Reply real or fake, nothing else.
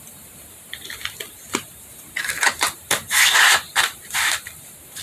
fake